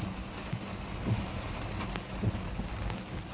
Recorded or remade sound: recorded